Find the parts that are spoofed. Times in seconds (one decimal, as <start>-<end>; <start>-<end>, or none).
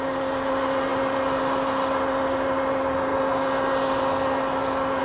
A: none